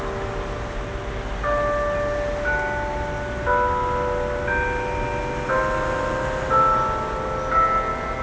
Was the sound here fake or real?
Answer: real